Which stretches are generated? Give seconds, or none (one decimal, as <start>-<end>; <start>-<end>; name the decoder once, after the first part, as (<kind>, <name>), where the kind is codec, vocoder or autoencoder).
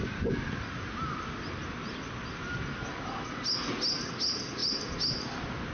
none